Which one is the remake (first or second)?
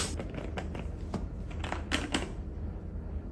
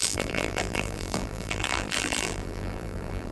second